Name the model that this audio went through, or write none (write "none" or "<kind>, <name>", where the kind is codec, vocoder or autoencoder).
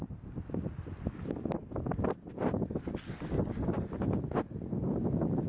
none